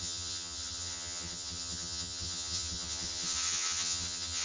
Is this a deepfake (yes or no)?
yes